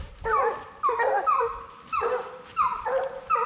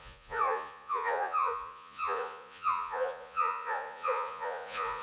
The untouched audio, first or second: first